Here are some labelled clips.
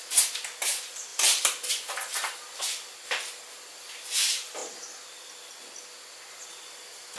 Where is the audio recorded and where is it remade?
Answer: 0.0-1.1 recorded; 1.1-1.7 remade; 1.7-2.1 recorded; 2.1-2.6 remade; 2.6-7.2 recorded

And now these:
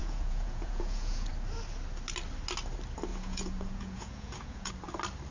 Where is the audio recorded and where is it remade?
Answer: 0.0-1.3 remade; 1.3-3.1 recorded; 3.1-4.7 remade; 4.7-5.3 recorded

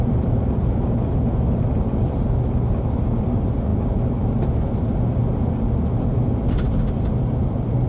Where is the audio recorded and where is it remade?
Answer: 0.0-7.9 recorded

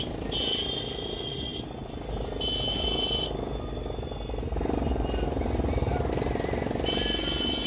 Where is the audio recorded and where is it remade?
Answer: 0.0-7.7 recorded

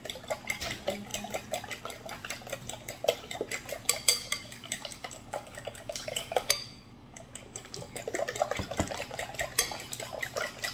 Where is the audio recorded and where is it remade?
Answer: 0.0-4.1 recorded; 4.1-8.0 remade; 8.0-10.7 recorded

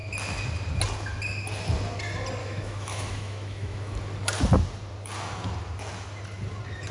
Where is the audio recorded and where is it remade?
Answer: 0.0-2.4 recorded; 2.4-4.0 remade; 4.0-6.9 recorded

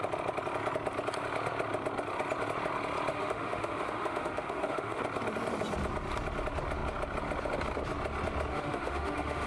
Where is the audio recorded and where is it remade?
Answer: 0.0-3.1 recorded; 3.1-5.0 remade; 5.0-8.5 recorded; 8.5-9.5 remade